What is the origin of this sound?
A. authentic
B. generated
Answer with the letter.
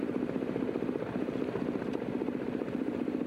B